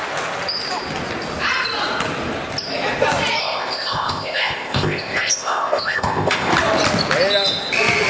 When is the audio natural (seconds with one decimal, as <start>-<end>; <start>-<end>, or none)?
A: 0.0-3.4; 6.5-8.1